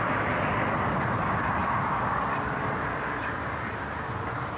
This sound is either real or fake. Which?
real